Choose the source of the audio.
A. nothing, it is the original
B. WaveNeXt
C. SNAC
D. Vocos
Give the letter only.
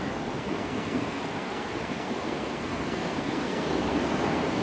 C